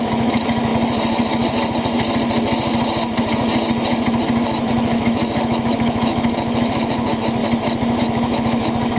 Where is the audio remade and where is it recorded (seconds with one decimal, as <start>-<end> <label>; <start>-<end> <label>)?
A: 0.0-0.7 remade; 0.7-4.7 recorded; 4.7-7.4 remade; 7.4-8.0 recorded; 8.0-9.0 remade